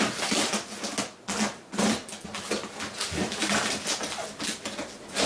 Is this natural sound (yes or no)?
yes